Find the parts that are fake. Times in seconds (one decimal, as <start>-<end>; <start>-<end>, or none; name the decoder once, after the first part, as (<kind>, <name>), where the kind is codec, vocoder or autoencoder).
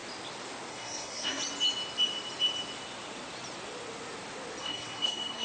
0.7-1.4 (codec, SNAC); 4.6-5.4